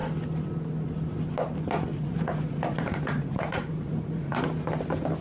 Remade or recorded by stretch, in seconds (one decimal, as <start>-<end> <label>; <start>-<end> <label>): 0.0-1.9 recorded; 1.9-4.4 remade; 4.4-5.2 recorded